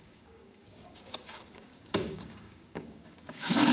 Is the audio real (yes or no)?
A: no